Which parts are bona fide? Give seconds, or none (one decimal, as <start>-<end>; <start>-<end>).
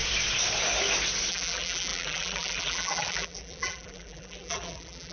0.0-1.3